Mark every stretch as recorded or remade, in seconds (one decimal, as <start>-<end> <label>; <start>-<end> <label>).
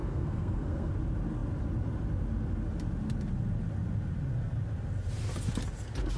0.0-0.9 remade; 0.9-6.2 recorded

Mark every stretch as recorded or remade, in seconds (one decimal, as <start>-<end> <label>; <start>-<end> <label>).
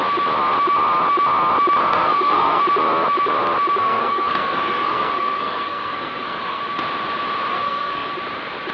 0.0-1.8 recorded; 1.8-2.6 remade; 2.6-3.8 recorded; 3.8-6.6 remade; 6.6-7.5 recorded; 7.5-8.1 remade; 8.1-8.7 recorded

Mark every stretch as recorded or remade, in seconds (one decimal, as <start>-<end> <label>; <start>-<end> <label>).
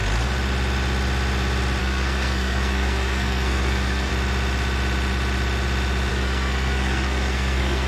0.0-1.8 recorded; 1.8-4.1 remade; 4.1-6.1 recorded; 6.1-7.9 remade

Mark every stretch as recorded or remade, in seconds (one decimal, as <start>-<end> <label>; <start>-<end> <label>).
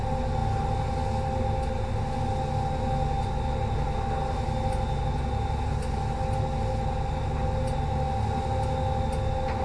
0.0-9.6 recorded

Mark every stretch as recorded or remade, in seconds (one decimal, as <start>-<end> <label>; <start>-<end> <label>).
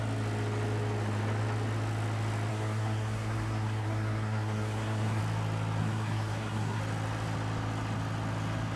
0.0-2.5 recorded; 2.5-5.2 remade; 5.2-5.8 recorded; 5.8-6.8 remade; 6.8-8.8 recorded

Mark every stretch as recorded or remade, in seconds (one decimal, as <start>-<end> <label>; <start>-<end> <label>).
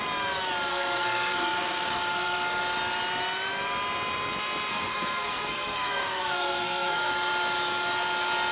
0.0-0.7 recorded; 0.7-2.6 remade; 2.6-4.7 recorded; 4.7-7.1 remade; 7.1-8.5 recorded